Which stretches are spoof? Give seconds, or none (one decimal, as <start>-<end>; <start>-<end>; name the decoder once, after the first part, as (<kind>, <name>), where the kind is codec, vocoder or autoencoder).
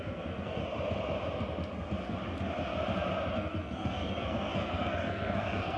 0.0-0.6 (codec, SNAC); 3.3-5.8